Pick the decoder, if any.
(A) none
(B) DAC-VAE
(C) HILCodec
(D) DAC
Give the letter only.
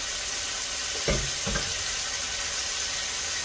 A